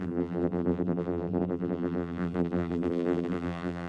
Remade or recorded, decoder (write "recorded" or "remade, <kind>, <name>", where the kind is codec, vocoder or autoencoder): remade, vocoder, BigVGAN v2